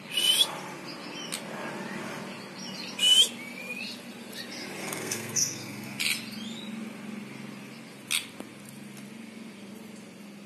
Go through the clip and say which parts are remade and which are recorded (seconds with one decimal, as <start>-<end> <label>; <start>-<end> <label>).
0.0-4.8 recorded; 4.8-6.0 remade; 6.0-10.5 recorded